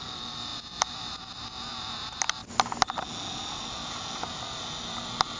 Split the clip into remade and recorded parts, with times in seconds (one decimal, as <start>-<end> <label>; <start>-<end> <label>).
0.0-5.4 recorded